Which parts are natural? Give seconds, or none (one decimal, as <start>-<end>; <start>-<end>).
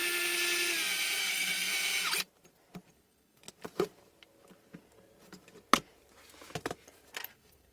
0.0-1.2; 1.7-2.9; 3.4-7.3